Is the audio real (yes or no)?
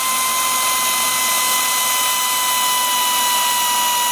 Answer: yes